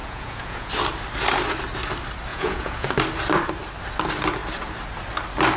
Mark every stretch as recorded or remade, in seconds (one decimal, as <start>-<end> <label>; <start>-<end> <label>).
0.0-0.7 remade; 0.7-2.3 recorded; 2.3-2.9 remade; 2.9-5.6 recorded